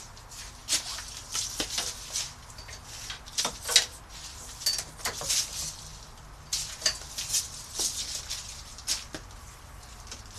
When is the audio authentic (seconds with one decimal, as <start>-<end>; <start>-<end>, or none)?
0.0-10.4